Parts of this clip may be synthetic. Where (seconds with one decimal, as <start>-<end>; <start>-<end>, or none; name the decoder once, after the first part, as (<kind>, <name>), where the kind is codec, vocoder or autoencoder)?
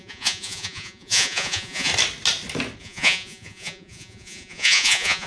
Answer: 0.0-1.9 (vocoder, Vocos); 2.8-5.3